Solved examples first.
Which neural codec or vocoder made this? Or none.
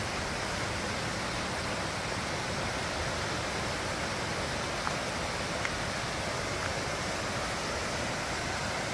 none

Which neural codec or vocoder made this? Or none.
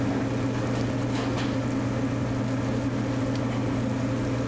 none